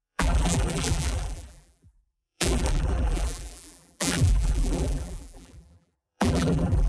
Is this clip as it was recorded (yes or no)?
no